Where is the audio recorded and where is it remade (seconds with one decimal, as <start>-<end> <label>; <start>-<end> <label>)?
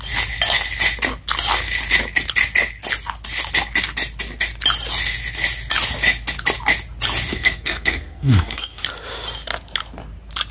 0.0-7.3 recorded; 7.3-8.8 remade; 8.8-10.5 recorded